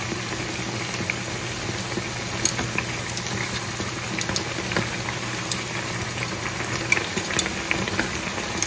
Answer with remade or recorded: recorded